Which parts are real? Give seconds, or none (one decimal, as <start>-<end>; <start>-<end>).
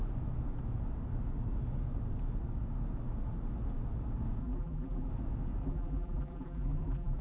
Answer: 0.0-4.4; 5.1-5.6